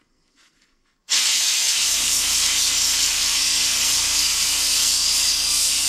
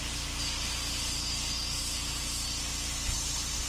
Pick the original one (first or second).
second